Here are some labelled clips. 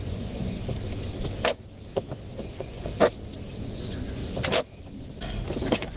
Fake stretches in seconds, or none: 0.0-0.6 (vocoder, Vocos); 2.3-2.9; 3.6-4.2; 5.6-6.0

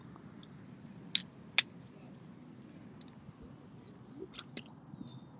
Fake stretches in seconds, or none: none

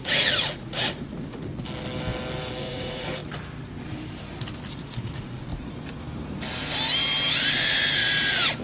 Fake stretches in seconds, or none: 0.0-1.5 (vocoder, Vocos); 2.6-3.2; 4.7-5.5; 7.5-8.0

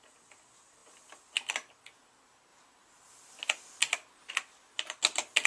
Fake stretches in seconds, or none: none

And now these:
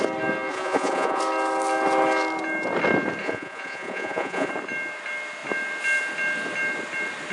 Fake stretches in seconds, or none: 0.5-1.2 (vocoder, Vocos); 3.2-4.5

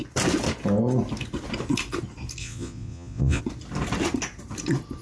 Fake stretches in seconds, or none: 2.4-3.4 (vocoder, Vocos)

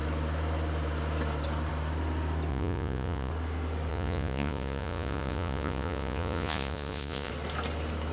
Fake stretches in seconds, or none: 2.5-3.3 (vocoder, Vocos); 3.9-7.3